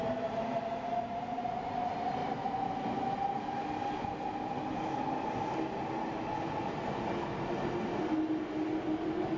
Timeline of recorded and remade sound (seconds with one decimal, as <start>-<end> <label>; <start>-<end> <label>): 0.0-9.4 recorded